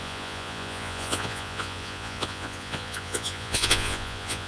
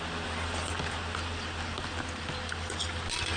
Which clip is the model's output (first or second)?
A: first